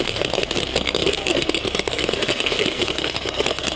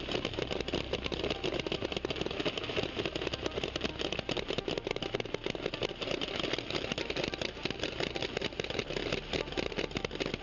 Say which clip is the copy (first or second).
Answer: first